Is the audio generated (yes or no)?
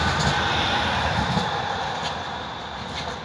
yes